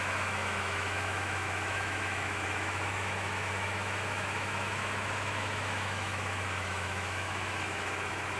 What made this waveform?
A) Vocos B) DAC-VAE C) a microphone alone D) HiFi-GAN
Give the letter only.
B